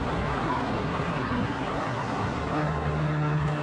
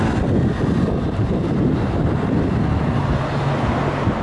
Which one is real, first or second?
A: second